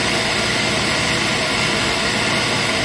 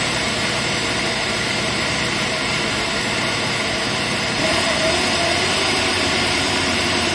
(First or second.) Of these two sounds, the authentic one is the first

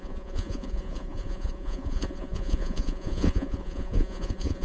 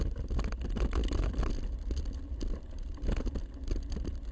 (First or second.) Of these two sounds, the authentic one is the second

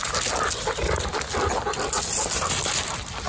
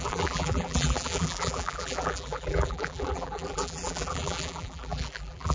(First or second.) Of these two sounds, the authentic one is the first